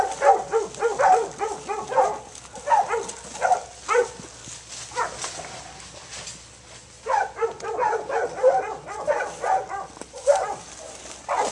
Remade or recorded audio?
recorded